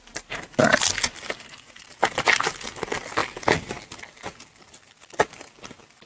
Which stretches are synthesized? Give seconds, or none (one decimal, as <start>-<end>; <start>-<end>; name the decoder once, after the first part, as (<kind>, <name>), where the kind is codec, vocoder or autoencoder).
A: none